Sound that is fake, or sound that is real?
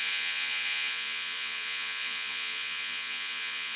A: fake